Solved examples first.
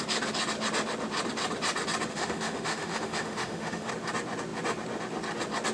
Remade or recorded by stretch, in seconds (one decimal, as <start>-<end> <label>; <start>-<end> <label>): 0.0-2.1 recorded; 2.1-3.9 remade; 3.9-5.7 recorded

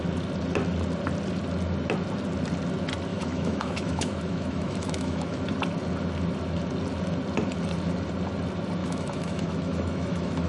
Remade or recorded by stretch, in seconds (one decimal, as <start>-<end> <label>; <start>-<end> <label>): 0.0-3.1 recorded; 3.1-5.4 remade; 5.4-8.8 recorded; 8.8-10.5 remade

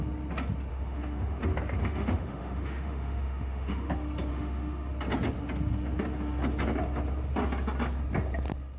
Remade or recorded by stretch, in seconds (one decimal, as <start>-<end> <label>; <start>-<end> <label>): 0.0-0.7 recorded; 0.7-1.4 remade; 1.4-1.8 recorded; 1.8-3.9 remade; 3.9-4.3 recorded; 4.3-4.9 remade; 4.9-8.8 recorded

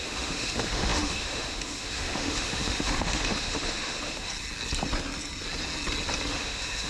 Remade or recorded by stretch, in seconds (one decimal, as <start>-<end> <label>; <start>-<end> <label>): 0.0-4.3 remade; 4.3-6.3 recorded; 6.3-6.9 remade

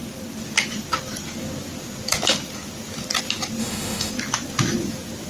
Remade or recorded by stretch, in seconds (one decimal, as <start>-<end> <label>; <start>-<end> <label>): 0.0-3.6 recorded; 3.6-4.1 remade; 4.1-5.3 recorded

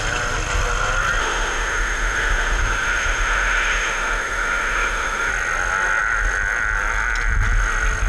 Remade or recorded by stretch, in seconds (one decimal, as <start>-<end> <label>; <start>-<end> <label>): 0.0-1.2 recorded; 1.2-5.3 remade; 5.3-8.1 recorded

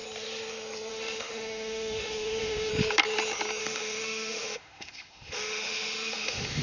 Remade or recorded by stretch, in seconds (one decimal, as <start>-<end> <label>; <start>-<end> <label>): 0.0-0.9 recorded; 0.9-2.7 remade; 2.7-3.6 recorded; 3.6-6.6 remade